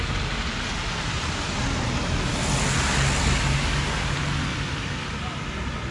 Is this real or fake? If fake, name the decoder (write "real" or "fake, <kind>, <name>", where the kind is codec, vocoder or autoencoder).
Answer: real